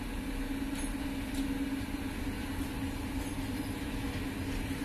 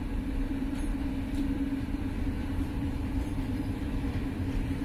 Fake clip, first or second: second